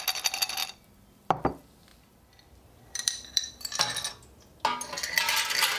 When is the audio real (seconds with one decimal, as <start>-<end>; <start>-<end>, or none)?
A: 0.0-0.6; 1.4-1.9; 4.1-5.8